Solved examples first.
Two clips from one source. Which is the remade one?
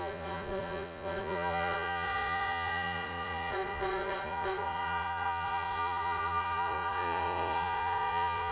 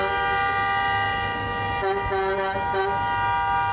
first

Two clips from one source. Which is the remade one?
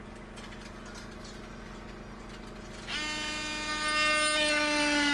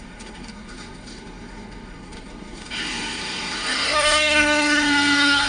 second